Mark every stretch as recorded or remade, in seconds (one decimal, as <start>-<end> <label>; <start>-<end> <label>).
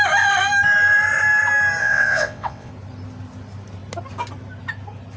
0.0-1.8 recorded; 1.8-2.7 remade; 2.7-5.2 recorded